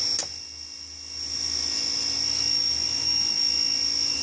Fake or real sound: real